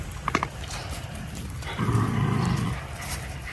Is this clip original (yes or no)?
no